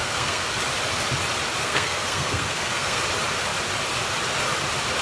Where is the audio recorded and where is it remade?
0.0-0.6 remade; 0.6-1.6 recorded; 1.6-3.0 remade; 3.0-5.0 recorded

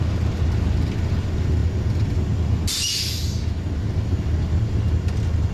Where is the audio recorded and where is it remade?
0.0-5.5 recorded